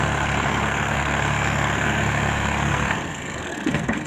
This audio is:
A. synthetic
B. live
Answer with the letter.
A